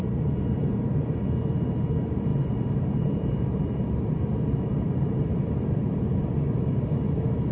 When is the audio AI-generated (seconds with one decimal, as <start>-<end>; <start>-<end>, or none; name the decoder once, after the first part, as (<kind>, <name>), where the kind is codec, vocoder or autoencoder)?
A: 2.3-6.8 (vocoder, BigVGAN v2)